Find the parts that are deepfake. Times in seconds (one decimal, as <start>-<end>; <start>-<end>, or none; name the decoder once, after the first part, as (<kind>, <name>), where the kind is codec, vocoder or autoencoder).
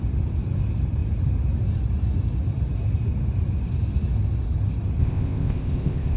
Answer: 5.0-6.2 (codec, ZipCodec)